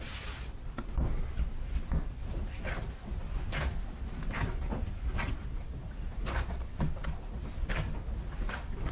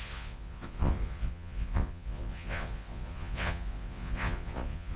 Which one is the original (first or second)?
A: first